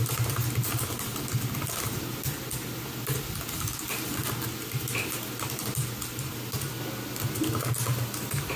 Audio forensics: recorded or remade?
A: recorded